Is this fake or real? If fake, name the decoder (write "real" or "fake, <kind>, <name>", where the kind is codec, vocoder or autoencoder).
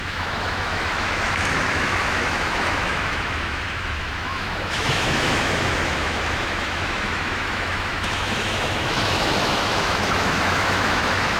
fake, autoencoder, DAC-VAE